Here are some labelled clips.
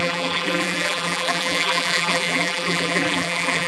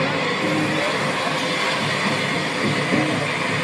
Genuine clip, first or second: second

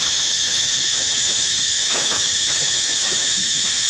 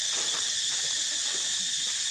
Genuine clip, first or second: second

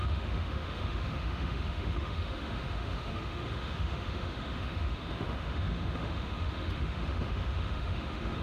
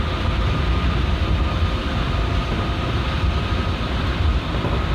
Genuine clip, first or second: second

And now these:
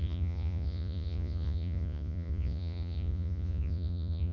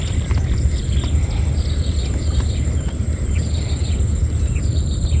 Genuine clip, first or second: second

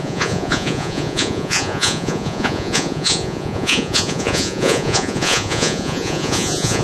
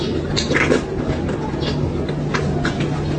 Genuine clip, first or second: second